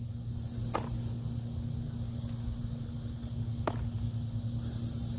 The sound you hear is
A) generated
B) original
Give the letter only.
B